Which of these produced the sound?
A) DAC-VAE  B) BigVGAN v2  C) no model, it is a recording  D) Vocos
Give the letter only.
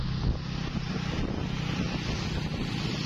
C